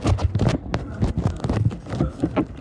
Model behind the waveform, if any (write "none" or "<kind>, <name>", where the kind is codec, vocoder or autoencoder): none